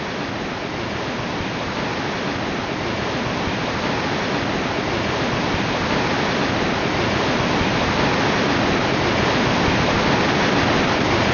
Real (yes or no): yes